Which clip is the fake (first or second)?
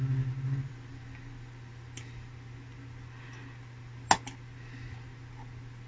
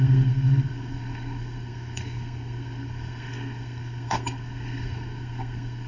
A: second